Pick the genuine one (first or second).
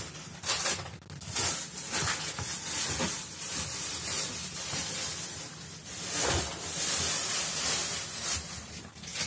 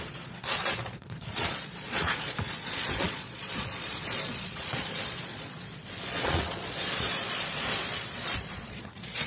first